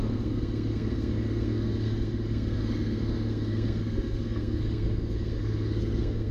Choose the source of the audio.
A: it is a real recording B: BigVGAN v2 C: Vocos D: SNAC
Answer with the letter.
D